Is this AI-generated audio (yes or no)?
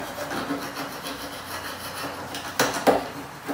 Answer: no